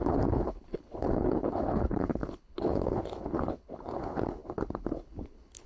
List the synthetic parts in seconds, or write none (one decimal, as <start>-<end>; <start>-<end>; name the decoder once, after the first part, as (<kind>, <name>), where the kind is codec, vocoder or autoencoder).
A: 0.0-5.7 (codec, HILCodec)